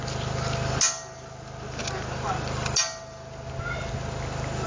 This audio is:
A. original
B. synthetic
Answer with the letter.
A